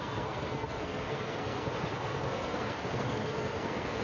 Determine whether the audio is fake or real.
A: fake